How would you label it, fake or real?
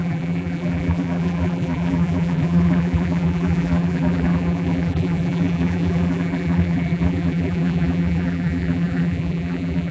fake